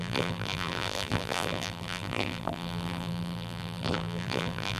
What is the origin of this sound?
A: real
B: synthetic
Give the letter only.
B